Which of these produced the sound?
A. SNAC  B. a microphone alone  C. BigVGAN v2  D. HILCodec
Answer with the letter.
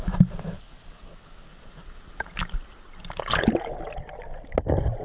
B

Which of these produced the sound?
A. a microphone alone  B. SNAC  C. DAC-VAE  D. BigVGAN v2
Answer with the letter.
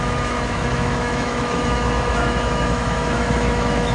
C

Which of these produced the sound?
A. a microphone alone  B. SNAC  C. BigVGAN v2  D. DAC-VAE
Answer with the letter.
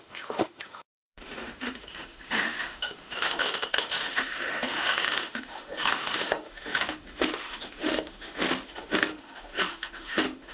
D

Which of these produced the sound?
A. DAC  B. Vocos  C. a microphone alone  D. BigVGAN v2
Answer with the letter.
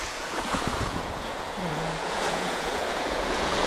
B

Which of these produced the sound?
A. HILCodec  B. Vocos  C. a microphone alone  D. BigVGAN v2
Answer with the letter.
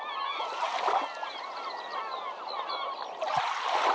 C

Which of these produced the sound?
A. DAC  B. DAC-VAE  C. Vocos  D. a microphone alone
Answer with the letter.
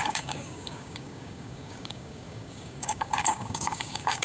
A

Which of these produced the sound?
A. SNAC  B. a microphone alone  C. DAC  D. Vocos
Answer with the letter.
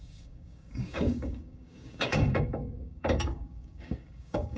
C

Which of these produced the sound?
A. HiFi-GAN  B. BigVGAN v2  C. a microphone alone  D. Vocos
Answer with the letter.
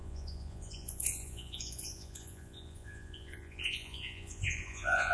D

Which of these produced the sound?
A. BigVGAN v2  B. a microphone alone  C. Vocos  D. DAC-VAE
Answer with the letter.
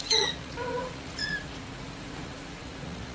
C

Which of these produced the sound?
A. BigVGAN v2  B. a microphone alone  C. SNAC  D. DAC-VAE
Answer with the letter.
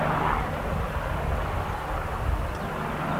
B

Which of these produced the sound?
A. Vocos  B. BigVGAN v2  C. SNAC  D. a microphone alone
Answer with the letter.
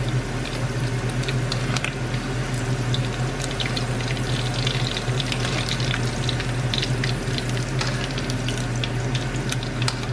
D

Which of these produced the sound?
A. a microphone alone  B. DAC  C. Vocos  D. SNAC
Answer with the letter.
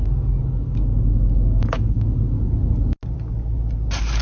A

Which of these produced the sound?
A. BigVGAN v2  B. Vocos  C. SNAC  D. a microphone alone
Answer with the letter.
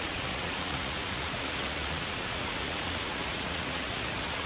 B